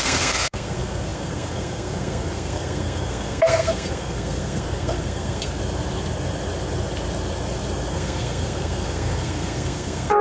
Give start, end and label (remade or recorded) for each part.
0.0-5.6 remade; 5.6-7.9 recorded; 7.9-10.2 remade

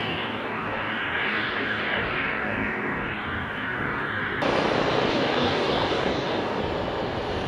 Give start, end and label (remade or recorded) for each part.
0.0-4.2 remade; 4.2-5.1 recorded; 5.1-6.6 remade; 6.6-7.5 recorded

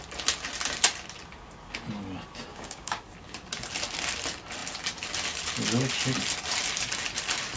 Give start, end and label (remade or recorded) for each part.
0.0-2.5 recorded; 2.5-3.0 remade; 3.0-7.6 recorded

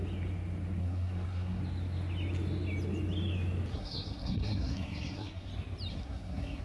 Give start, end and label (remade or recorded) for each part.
0.0-0.8 recorded; 0.8-1.6 remade; 1.6-3.7 recorded; 3.7-5.5 remade; 5.5-5.9 recorded; 5.9-6.6 remade